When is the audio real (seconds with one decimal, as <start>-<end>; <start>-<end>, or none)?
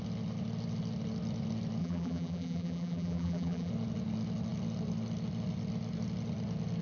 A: 0.0-1.8; 3.7-6.8